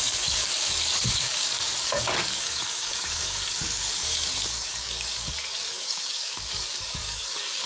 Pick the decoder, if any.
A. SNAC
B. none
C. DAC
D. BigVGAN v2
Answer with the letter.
C